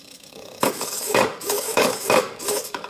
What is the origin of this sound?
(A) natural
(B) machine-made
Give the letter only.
B